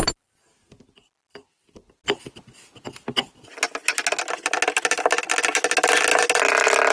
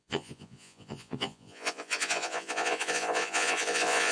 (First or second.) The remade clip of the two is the second